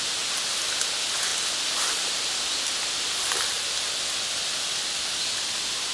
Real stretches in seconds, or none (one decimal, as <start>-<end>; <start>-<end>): 0.0-5.9